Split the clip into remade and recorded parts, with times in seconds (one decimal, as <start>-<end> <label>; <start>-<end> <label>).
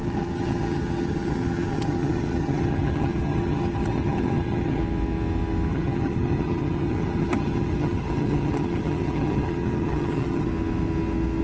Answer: 0.0-4.8 remade; 4.8-5.7 recorded; 5.7-10.5 remade; 10.5-11.4 recorded